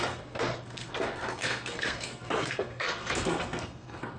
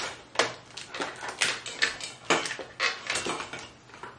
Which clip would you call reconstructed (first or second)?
first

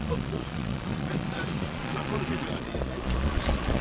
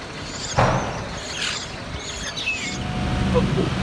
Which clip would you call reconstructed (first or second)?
first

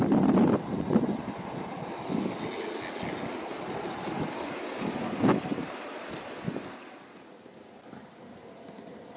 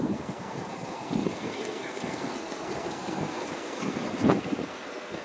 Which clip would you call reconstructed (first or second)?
second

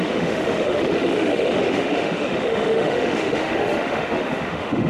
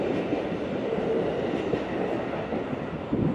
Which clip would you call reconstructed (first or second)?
first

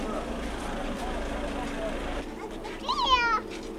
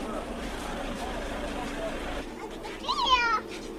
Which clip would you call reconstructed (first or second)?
second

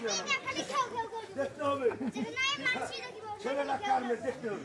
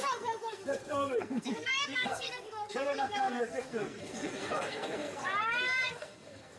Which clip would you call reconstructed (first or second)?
second